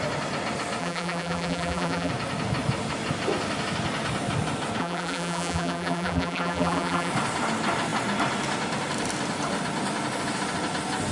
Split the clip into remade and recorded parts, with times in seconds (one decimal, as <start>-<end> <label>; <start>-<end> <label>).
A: 0.0-0.8 recorded; 0.8-2.1 remade; 2.1-4.8 recorded; 4.8-7.1 remade; 7.1-11.1 recorded